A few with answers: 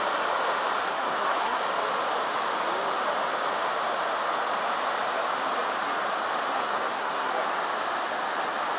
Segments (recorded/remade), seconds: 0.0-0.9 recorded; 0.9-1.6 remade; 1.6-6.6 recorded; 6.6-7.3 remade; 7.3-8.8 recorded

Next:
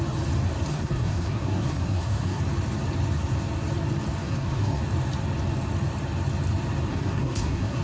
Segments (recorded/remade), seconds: 0.0-0.7 recorded; 0.7-2.4 remade; 2.4-4.2 recorded; 4.2-4.8 remade; 4.8-6.9 recorded; 6.9-7.8 remade

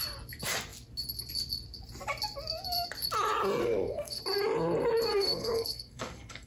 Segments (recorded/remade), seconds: 0.0-3.6 recorded; 3.6-4.2 remade; 4.2-5.1 recorded; 5.1-6.5 remade